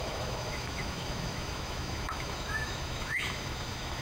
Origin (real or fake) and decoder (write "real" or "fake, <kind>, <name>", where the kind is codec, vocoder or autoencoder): fake, autoencoder, DAC-VAE